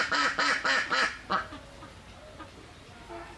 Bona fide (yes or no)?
yes